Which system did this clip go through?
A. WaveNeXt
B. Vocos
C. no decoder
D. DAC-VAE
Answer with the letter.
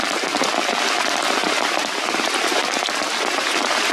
C